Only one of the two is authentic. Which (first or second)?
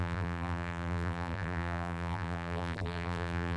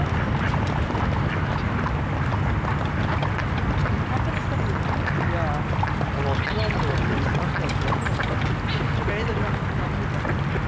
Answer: second